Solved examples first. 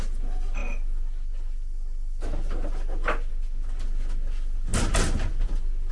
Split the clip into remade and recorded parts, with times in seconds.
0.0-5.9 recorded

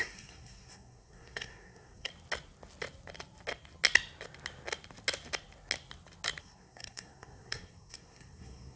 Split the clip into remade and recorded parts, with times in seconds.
0.0-2.1 remade; 2.1-6.4 recorded; 6.4-8.8 remade

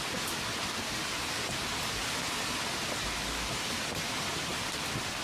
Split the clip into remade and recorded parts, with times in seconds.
0.0-5.2 recorded